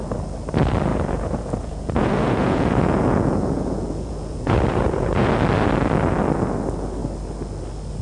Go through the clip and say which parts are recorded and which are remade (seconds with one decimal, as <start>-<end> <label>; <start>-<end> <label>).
0.0-0.9 recorded; 0.9-5.3 remade; 5.3-8.0 recorded